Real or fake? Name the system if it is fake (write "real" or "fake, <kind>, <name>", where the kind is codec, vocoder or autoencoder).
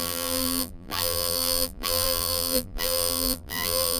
fake, vocoder, BigVGAN v2